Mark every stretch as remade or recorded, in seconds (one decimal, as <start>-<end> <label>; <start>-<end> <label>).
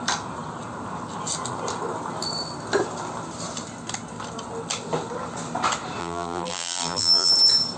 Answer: 0.0-6.0 recorded; 6.0-7.3 remade; 7.3-7.8 recorded